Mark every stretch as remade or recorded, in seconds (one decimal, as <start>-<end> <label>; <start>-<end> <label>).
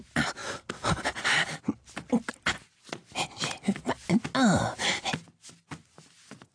0.0-6.5 recorded